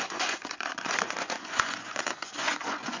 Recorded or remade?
remade